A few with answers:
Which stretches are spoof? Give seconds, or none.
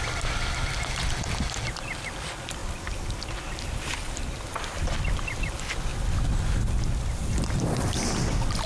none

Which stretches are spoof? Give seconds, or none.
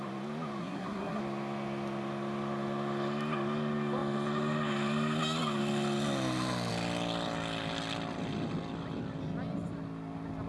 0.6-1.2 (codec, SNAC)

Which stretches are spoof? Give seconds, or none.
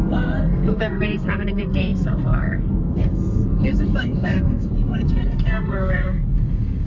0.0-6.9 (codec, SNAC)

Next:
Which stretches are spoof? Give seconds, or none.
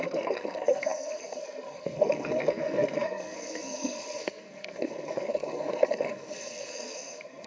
0.0-7.5 (codec, SNAC)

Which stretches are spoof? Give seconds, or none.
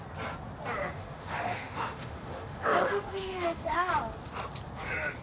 0.8-3.9 (autoencoder, DAC-VAE)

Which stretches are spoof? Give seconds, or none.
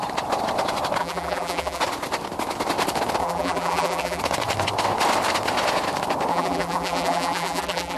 1.0-1.8 (vocoder, BigVGAN v2); 3.2-4.2; 6.3-8.0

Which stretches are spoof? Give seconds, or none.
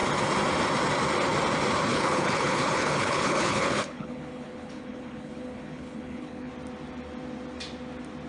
1.9-6.5 (codec, HILCodec)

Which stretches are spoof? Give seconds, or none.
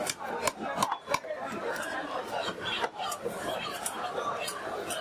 1.6-4.6 (vocoder, BigVGAN v2)